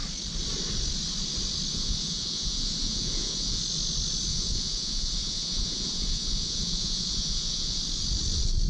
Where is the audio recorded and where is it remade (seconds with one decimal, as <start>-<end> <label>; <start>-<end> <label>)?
0.0-1.7 recorded; 1.7-3.6 remade; 3.6-4.3 recorded; 4.3-7.8 remade; 7.8-8.7 recorded